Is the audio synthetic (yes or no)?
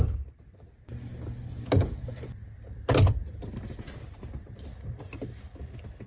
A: no